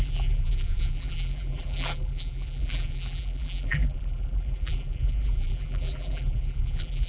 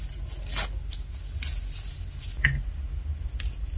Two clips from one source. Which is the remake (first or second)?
first